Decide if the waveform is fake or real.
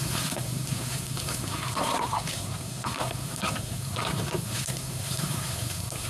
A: fake